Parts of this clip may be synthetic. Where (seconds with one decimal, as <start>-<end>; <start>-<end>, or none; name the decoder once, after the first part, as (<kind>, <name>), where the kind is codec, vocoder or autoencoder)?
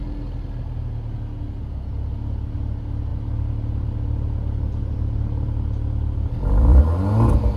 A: 3.1-6.8 (vocoder, BigVGAN v2)